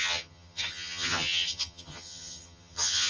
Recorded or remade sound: remade